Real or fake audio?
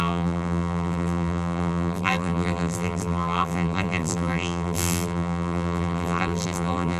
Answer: fake